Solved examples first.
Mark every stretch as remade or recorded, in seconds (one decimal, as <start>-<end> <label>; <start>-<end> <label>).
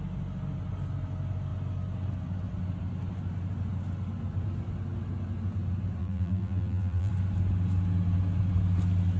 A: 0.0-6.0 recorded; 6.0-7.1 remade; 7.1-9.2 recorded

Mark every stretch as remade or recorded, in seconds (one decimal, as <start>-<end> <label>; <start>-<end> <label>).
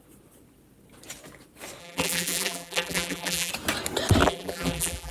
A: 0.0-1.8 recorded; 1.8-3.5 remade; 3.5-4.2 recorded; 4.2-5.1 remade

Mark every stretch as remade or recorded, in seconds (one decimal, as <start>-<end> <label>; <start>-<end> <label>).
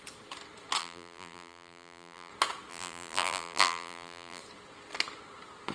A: 0.0-0.8 recorded; 0.8-2.3 remade; 2.3-2.7 recorded; 2.7-4.4 remade; 4.4-5.7 recorded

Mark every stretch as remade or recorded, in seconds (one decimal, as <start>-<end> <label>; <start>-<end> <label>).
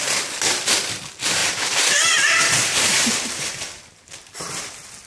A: 0.0-1.4 recorded; 1.4-4.5 remade; 4.5-5.1 recorded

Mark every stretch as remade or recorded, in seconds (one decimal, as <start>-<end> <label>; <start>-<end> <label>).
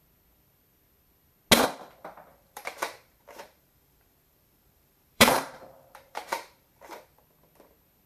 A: 0.0-2.3 recorded; 2.3-7.2 remade; 7.2-8.1 recorded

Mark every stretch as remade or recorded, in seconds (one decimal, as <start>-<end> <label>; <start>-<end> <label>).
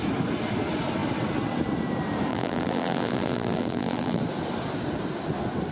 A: 0.0-2.3 recorded; 2.3-4.2 remade; 4.2-5.7 recorded